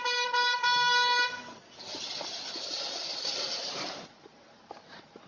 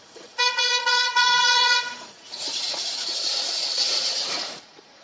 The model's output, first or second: second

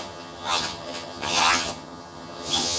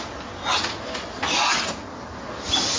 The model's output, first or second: first